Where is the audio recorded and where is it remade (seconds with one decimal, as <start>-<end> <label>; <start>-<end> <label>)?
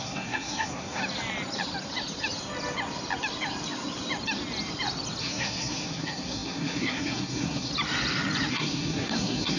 0.0-1.0 remade; 1.0-5.2 recorded; 5.2-7.7 remade; 7.7-8.5 recorded; 8.5-9.6 remade